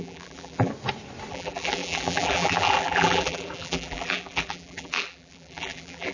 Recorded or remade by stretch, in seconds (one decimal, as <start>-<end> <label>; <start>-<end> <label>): 0.0-0.7 remade; 0.7-1.3 recorded; 1.3-6.1 remade

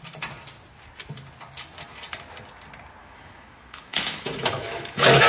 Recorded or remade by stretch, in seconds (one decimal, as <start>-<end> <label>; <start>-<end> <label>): 0.0-3.0 recorded; 3.0-5.3 remade

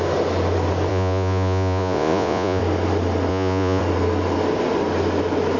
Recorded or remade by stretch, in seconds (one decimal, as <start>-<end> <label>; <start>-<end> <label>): 0.0-0.9 recorded; 0.9-2.6 remade; 2.6-3.3 recorded; 3.3-3.8 remade; 3.8-5.6 recorded

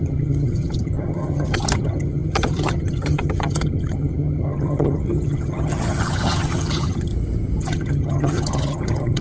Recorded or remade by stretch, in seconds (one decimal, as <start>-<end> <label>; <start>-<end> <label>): 0.0-7.1 remade; 7.1-7.6 recorded; 7.6-9.2 remade